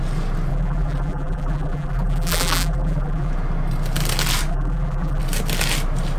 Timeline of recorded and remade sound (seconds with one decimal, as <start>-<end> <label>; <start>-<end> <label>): 0.0-0.5 recorded; 0.5-3.3 remade; 3.3-4.5 recorded; 4.5-5.2 remade; 5.2-6.2 recorded